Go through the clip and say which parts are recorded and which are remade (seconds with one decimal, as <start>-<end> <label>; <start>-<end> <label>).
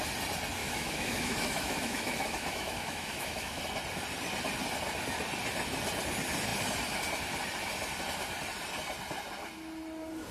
0.0-0.6 recorded; 0.6-3.6 remade; 3.6-10.3 recorded